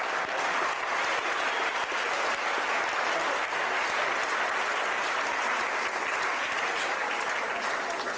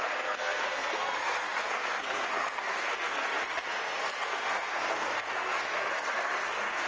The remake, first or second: second